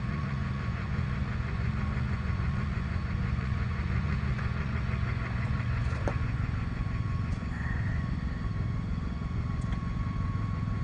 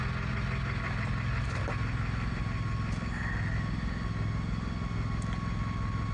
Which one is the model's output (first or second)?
first